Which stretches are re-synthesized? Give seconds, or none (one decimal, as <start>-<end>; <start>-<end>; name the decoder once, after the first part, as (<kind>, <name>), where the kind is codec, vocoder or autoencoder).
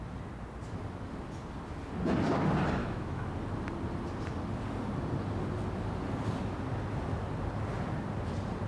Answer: 2.8-3.3 (autoencoder, DAC-VAE)